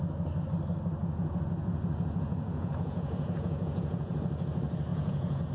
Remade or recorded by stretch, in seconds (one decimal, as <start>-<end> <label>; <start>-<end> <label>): 0.0-1.0 recorded; 1.0-4.1 remade; 4.1-4.9 recorded; 4.9-5.5 remade